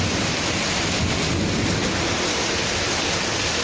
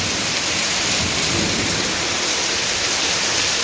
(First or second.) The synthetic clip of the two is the second